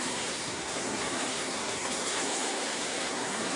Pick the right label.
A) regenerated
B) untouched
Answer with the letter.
A